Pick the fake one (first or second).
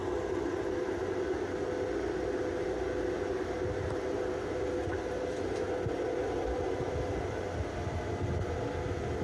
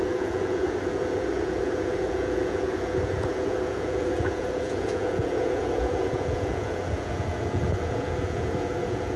second